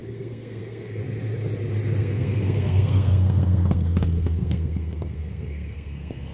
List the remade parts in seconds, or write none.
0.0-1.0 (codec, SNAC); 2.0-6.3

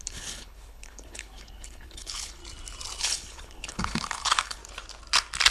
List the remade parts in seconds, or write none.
0.0-2.4 (codec, HILCodec); 3.0-4.6

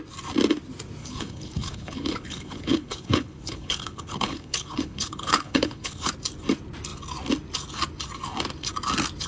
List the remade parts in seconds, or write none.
1.0-6.1 (codec, HILCodec)

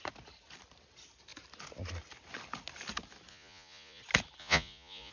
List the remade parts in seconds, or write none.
3.3-4.0 (vocoder, Vocos); 4.4-5.1

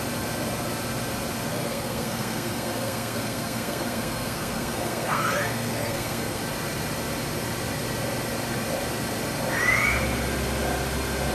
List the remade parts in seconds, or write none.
1.5-6.4 (codec, SNAC)